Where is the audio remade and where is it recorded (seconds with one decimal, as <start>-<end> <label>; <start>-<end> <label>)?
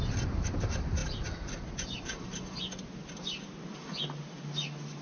0.0-5.0 recorded